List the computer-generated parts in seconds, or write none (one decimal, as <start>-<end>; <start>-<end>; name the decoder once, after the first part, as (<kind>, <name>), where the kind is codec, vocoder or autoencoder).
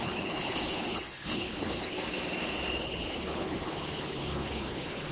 0.0-2.0 (codec, HILCodec); 2.8-5.1